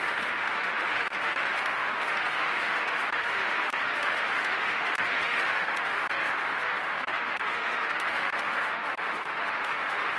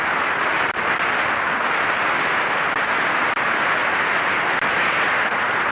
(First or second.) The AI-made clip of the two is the first